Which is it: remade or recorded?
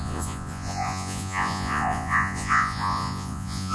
remade